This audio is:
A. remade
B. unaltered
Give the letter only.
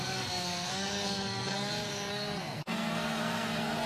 A